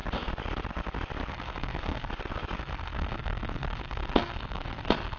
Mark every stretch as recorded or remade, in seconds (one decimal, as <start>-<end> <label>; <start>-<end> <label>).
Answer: 0.0-1.3 recorded; 1.3-2.1 remade; 2.1-2.6 recorded; 2.6-5.2 remade